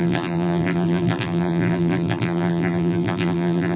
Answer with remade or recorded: remade